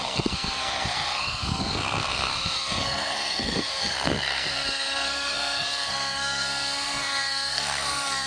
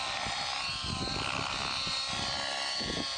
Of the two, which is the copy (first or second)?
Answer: first